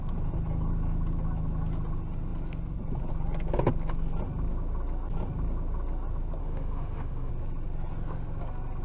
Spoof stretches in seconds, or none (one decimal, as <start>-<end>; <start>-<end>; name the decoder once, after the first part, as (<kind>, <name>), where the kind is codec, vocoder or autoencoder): 6.4-7.3 (autoencoder, DAC-VAE)